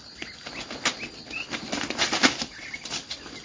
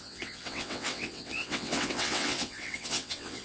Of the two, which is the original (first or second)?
first